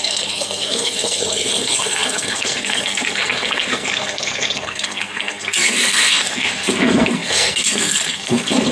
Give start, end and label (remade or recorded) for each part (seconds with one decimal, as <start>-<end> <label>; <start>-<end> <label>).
0.0-8.7 remade